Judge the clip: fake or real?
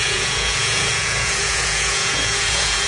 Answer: fake